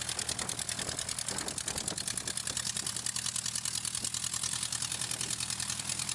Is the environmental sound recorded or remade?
recorded